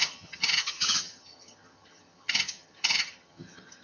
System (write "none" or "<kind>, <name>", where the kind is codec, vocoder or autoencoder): vocoder, HiFi-GAN